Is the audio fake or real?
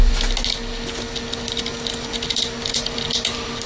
real